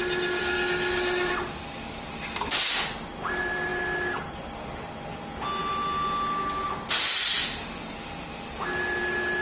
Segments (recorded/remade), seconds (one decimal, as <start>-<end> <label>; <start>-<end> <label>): 0.0-0.4 recorded; 0.4-1.3 remade; 1.3-9.4 recorded